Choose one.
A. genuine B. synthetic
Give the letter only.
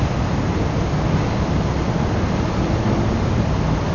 A